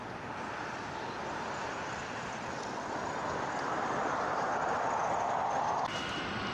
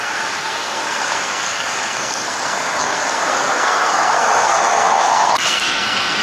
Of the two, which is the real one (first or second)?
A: first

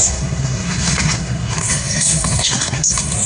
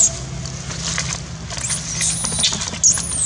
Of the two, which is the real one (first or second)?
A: second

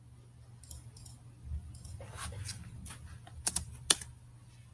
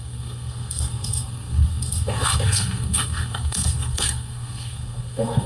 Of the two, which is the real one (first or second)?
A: first